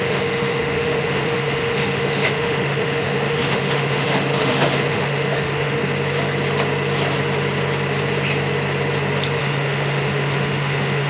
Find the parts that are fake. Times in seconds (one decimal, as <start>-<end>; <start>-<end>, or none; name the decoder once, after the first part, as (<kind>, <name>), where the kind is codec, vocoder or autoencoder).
0.0-5.8 (autoencoder, DAC-VAE); 9.4-11.1